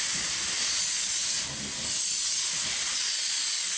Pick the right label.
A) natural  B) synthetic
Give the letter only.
A